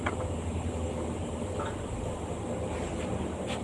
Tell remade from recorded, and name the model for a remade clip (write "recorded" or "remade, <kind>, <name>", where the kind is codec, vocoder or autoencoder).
recorded